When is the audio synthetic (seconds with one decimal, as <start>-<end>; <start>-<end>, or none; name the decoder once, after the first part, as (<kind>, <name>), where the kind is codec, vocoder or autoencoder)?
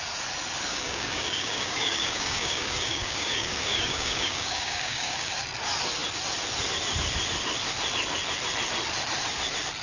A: 0.7-5.3 (codec, DAC)